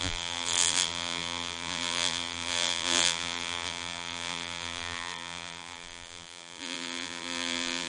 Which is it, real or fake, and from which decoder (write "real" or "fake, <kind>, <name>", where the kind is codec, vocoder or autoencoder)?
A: fake, vocoder, BigVGAN v2